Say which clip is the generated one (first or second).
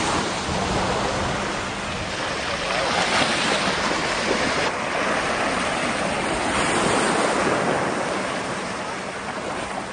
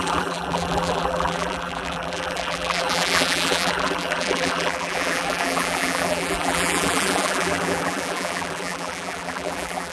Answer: second